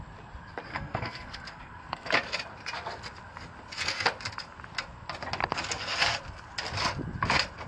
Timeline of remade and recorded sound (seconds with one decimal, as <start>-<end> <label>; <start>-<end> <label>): 0.0-0.7 recorded; 0.7-2.1 remade; 2.1-7.7 recorded